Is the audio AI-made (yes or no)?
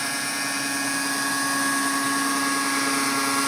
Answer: no